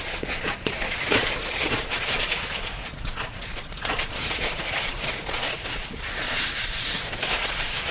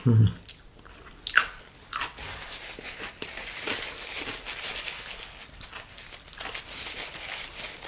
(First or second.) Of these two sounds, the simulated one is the first